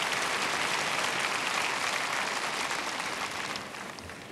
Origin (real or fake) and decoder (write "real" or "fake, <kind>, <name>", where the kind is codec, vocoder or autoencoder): real